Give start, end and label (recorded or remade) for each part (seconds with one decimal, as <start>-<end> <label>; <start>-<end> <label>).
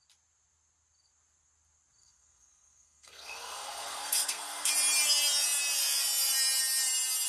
0.0-2.0 recorded; 2.0-4.7 remade; 4.7-7.3 recorded